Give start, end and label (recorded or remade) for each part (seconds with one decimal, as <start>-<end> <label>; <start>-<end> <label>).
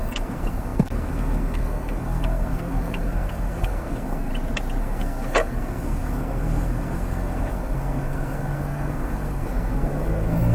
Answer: 0.0-4.3 remade; 4.3-4.8 recorded; 4.8-10.5 remade